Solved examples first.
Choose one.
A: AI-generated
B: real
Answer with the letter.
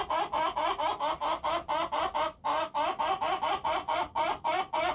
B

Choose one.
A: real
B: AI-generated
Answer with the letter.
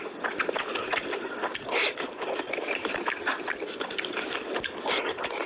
A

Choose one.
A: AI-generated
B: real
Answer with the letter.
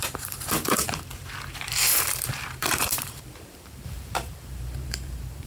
A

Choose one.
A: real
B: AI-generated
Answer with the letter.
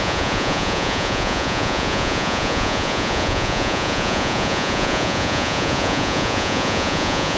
B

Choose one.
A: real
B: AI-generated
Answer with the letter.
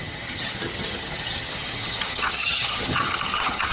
B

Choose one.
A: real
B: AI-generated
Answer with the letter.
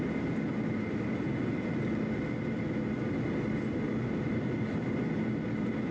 A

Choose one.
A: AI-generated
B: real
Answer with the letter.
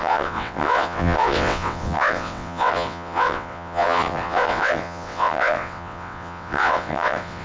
A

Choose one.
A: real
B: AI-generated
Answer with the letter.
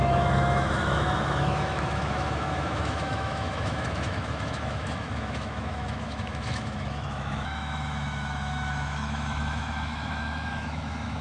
B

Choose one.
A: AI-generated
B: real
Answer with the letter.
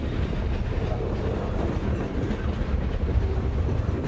B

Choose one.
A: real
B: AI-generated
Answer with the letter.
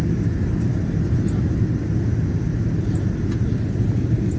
A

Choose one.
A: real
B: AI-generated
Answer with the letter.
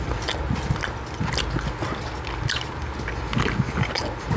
A